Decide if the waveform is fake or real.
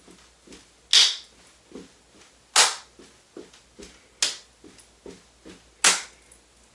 real